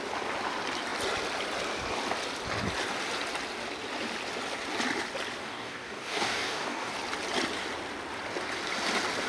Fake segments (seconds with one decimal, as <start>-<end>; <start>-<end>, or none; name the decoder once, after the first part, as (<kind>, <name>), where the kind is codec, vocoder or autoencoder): 5.4-6.9 (codec, DAC)